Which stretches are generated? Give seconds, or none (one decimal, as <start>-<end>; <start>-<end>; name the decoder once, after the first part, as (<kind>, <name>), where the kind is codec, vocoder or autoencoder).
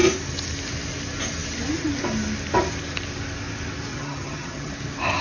3.9-4.7 (vocoder, HiFi-GAN)